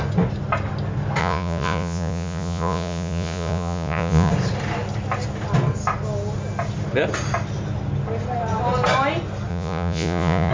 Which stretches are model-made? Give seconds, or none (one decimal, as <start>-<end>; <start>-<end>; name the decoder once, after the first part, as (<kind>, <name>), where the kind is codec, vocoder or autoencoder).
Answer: 1.2-4.3 (vocoder, Vocos); 9.5-10.5